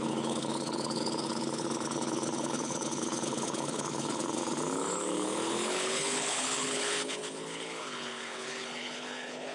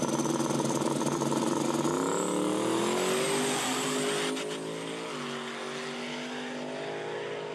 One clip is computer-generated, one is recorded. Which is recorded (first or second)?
second